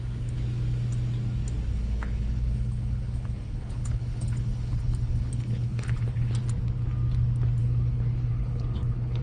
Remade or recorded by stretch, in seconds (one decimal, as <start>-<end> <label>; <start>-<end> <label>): 0.0-1.7 recorded; 1.7-6.3 remade; 6.3-7.6 recorded; 7.6-9.2 remade